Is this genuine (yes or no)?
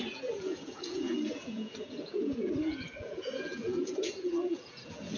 no